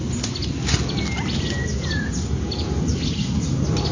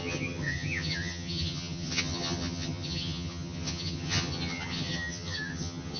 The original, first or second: first